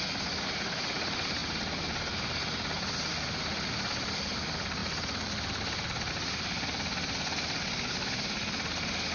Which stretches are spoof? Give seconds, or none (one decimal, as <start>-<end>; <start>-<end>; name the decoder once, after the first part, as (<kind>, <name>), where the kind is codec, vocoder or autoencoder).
none